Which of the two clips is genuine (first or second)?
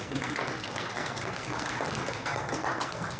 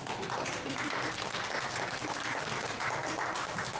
second